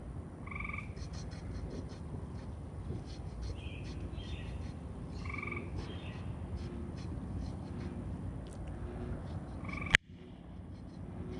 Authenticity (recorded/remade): recorded